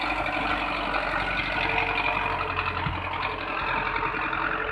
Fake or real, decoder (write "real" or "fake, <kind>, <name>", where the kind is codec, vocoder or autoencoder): real